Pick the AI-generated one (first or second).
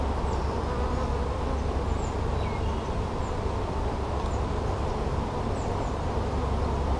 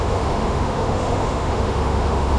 second